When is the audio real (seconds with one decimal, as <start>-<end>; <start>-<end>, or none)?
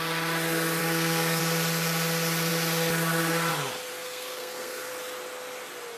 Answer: 0.0-0.8; 1.4-3.9; 4.9-6.0